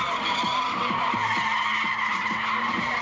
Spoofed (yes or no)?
no